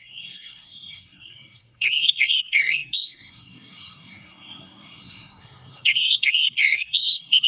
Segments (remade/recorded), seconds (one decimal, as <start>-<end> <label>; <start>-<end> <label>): 0.0-7.5 remade